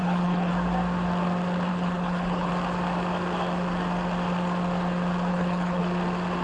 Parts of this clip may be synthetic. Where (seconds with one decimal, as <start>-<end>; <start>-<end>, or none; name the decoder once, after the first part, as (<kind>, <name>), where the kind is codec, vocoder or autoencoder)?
0.0-0.5 (codec, HILCodec); 1.7-2.5; 5.3-5.8